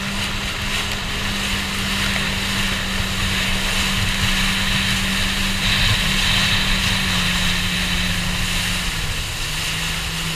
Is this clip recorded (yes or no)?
yes